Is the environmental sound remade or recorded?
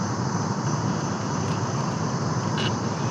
recorded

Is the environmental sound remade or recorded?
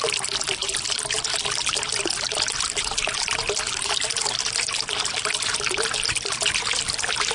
recorded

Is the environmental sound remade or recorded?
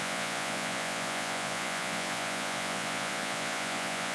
remade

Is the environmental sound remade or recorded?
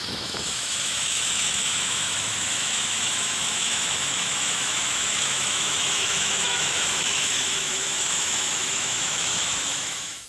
remade